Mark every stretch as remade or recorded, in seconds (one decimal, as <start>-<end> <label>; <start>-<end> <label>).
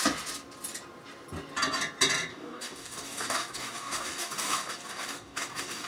0.0-2.3 recorded; 2.3-5.9 remade